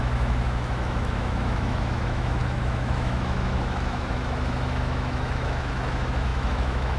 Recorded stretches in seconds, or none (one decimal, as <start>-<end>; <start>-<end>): none